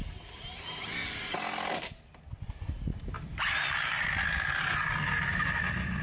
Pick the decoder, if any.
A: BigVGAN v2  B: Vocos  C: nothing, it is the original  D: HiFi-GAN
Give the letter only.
C